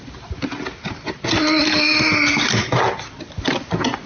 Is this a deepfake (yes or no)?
no